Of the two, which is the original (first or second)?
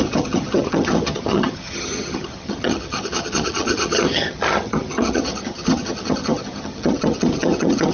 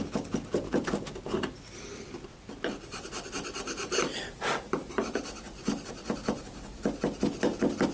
second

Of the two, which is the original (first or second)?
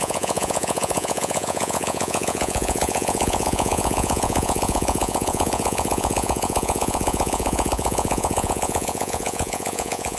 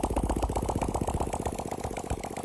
second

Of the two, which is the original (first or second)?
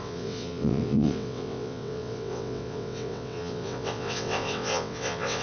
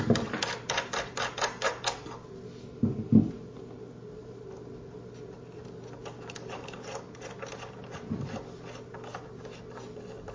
second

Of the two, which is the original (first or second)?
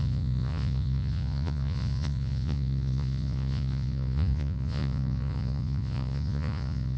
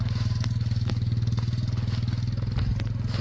second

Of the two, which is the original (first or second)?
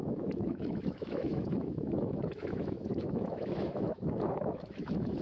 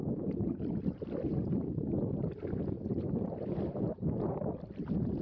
second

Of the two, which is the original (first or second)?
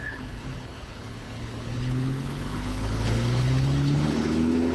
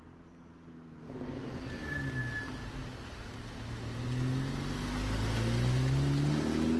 second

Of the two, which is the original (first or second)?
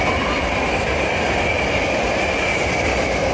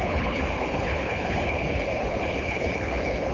first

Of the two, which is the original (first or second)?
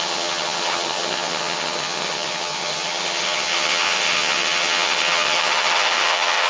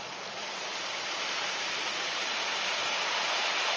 second